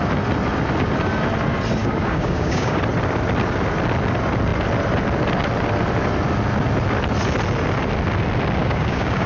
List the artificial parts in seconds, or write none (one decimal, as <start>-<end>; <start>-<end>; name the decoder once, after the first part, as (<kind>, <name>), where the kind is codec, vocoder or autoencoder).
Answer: 1.8-2.8 (codec, DAC); 8.6-9.3